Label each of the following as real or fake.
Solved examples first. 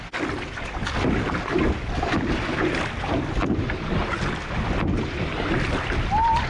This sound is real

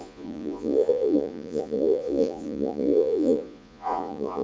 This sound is fake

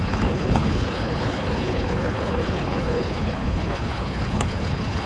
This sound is fake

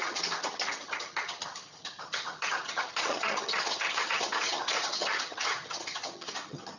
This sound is fake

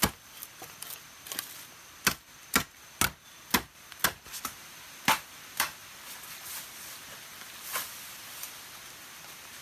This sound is real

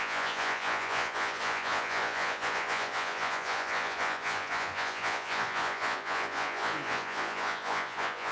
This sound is fake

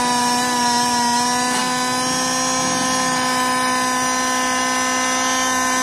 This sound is real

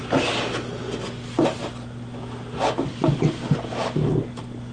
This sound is fake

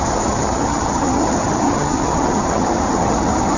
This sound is fake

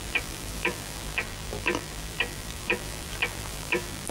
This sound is fake